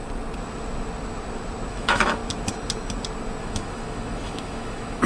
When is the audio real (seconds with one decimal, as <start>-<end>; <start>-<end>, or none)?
0.0-1.7; 2.2-3.4